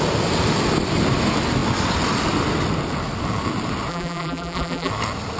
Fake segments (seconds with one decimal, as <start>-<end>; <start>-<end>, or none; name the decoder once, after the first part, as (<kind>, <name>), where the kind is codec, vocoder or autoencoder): 3.9-4.9 (vocoder, BigVGAN v2)

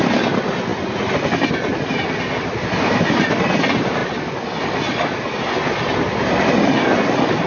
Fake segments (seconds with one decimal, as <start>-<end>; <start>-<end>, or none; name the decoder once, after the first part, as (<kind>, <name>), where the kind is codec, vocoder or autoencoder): 4.0-4.6 (vocoder, BigVGAN v2)

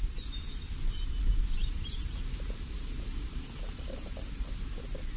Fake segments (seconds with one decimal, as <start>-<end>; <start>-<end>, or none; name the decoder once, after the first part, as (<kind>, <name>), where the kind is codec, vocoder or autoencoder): 1.6-4.7 (vocoder, BigVGAN v2)

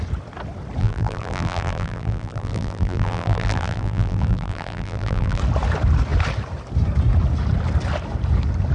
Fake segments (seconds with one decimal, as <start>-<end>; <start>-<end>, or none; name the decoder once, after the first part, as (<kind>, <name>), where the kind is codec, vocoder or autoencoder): 0.8-5.4 (vocoder, BigVGAN v2)